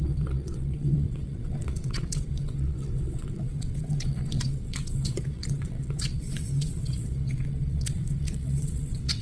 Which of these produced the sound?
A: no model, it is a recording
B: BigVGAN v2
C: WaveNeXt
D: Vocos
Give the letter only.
C